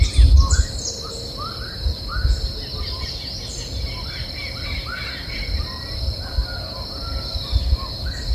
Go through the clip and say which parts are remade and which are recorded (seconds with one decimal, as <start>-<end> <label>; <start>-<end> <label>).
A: 0.0-8.3 recorded